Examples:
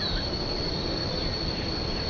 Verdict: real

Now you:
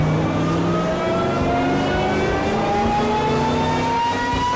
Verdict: real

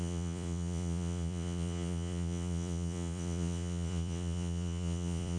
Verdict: fake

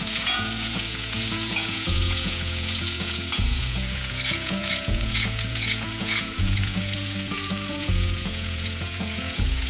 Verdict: fake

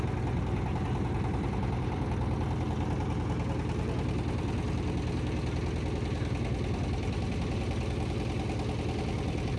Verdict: real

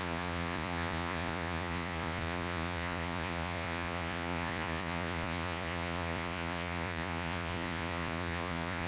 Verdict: fake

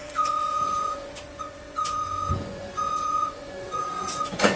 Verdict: fake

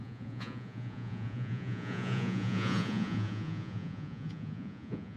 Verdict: fake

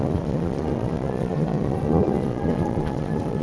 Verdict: fake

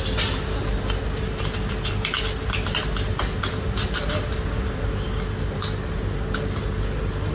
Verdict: real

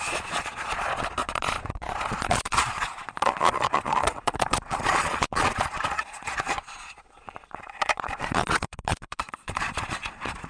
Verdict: fake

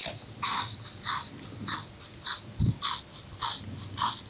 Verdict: real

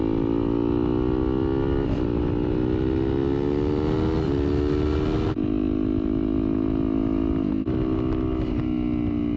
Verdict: real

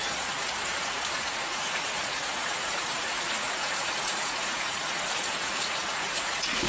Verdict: fake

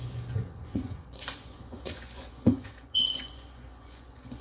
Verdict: fake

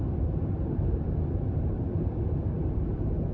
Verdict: real